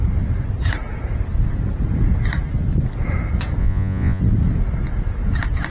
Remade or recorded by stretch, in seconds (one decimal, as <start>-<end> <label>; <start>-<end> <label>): 0.0-3.6 recorded; 3.6-4.2 remade; 4.2-5.7 recorded